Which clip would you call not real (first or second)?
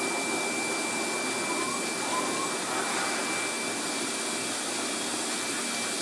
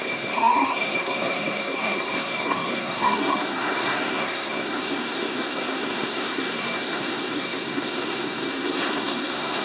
second